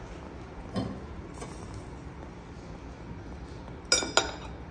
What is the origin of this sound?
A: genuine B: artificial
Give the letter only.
A